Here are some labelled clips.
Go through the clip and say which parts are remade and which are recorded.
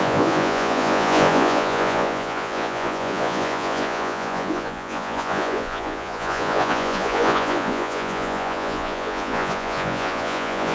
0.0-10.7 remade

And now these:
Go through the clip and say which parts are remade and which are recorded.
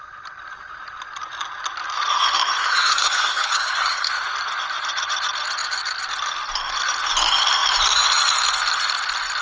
0.0-2.6 recorded; 2.6-4.1 remade; 4.1-9.4 recorded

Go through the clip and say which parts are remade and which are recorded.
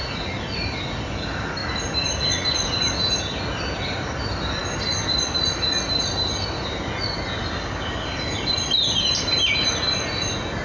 0.0-10.6 recorded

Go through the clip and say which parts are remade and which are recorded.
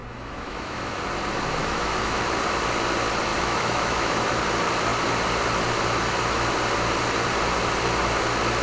0.0-1.0 remade; 1.0-1.6 recorded; 1.6-2.2 remade; 2.2-3.3 recorded; 3.3-4.3 remade; 4.3-8.6 recorded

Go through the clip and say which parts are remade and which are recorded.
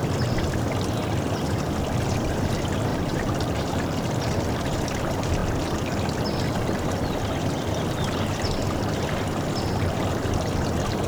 0.0-2.9 recorded; 2.9-4.2 remade; 4.2-11.1 recorded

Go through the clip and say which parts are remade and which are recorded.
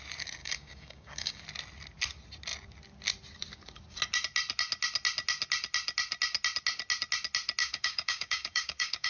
0.0-0.4 recorded; 0.4-1.4 remade; 1.4-7.6 recorded; 7.6-9.1 remade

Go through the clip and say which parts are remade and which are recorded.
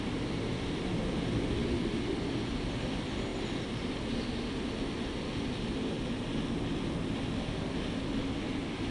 0.0-8.9 recorded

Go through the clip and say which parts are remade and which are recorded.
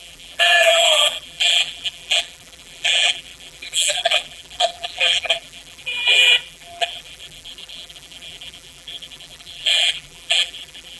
0.0-11.0 remade